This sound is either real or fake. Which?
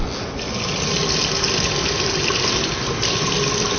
real